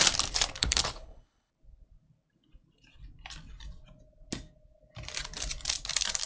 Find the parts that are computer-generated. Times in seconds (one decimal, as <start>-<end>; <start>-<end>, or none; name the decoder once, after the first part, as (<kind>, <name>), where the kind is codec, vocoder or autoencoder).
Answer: 0.6-1.5 (codec, HILCodec)